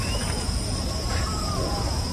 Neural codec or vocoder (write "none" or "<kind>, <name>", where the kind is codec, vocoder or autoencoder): vocoder, Vocos